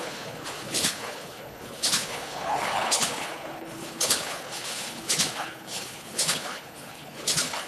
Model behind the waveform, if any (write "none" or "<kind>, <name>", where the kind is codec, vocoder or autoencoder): codec, HILCodec